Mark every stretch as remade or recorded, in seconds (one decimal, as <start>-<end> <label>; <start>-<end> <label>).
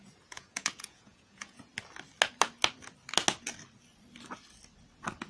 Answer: 0.0-1.7 remade; 1.7-5.3 recorded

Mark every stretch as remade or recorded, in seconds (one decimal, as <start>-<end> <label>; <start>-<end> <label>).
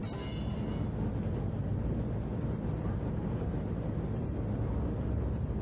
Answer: 0.0-1.7 recorded; 1.7-5.1 remade; 5.1-5.6 recorded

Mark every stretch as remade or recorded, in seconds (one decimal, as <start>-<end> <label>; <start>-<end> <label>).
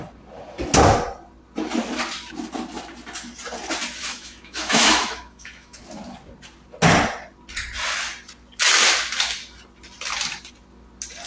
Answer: 0.0-4.0 recorded; 4.0-5.8 remade; 5.8-11.3 recorded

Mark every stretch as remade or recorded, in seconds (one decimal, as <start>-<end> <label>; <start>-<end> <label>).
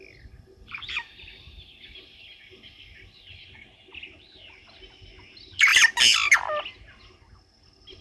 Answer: 0.0-8.0 recorded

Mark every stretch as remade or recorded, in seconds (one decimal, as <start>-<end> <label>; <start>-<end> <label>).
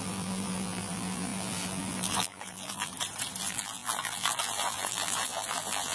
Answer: 0.0-2.9 remade; 2.9-3.4 recorded; 3.4-5.9 remade